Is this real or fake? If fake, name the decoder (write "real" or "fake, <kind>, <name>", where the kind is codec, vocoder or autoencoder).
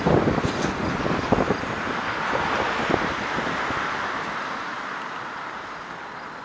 real